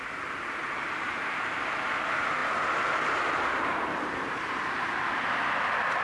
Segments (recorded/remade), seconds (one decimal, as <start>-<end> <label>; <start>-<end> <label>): 0.0-0.6 recorded; 0.6-1.5 remade; 1.5-6.0 recorded